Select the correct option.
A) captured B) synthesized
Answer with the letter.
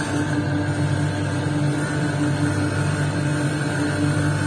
A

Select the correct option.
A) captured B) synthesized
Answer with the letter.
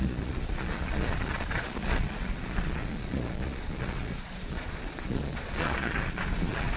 B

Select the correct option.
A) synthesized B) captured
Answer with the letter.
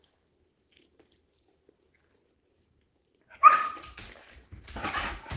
A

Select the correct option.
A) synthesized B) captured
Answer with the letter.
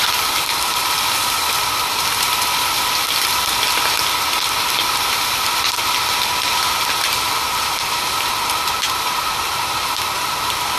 A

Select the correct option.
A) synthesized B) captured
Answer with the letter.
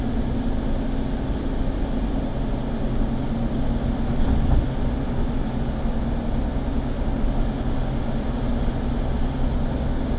B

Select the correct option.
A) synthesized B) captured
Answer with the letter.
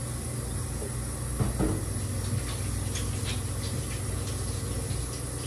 B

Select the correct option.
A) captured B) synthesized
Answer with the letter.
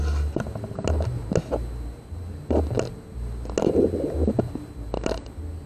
A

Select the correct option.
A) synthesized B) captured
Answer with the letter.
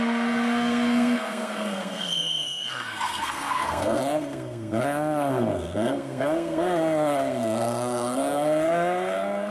A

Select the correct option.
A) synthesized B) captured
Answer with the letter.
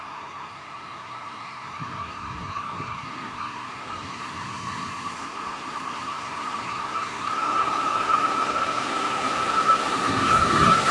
A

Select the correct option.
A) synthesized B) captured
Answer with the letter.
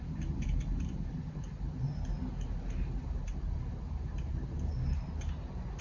B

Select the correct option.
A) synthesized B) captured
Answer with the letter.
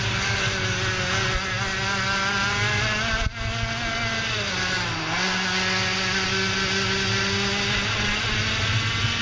B